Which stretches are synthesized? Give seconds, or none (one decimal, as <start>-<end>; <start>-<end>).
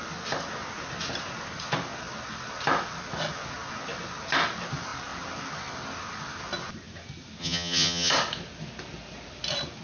7.4-8.1